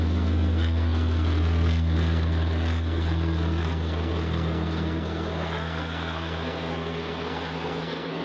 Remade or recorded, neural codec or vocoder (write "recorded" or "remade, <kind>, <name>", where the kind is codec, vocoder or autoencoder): remade, codec, SNAC